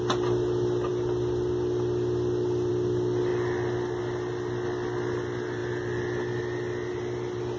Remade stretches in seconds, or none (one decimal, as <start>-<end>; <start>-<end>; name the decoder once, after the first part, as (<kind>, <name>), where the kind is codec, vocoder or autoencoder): none